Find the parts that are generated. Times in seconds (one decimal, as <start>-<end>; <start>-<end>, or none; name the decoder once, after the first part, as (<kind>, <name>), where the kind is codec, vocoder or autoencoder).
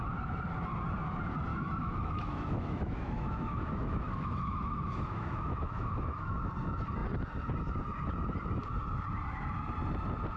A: 1.5-6.5 (autoencoder, DAC-VAE)